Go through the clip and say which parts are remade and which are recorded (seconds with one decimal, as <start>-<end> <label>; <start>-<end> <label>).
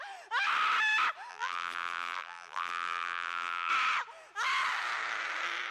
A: 0.0-1.3 recorded; 1.3-3.7 remade; 3.7-5.7 recorded